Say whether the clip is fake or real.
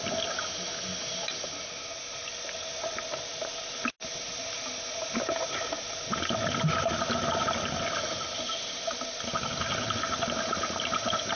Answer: real